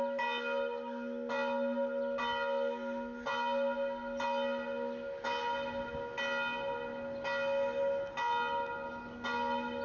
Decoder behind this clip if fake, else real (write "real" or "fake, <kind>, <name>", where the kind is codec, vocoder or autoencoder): real